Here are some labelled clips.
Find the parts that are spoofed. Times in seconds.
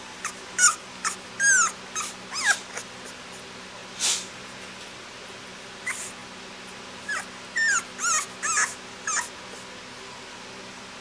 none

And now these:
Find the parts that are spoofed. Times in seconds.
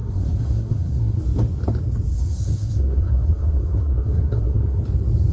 0.0-1.2 (codec, SNAC); 2.1-4.8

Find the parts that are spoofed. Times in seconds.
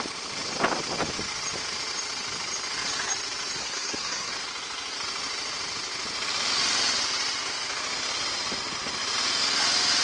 3.6-4.3 (codec, SNAC)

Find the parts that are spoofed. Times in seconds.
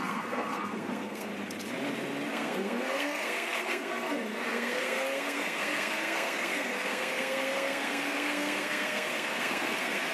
0.0-1.3 (codec, SNAC); 2.3-10.1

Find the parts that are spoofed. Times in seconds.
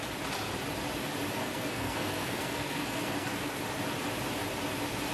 1.4-3.6 (codec, SNAC)